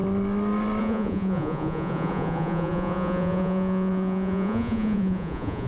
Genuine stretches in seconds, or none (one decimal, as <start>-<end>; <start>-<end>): 0.0-0.8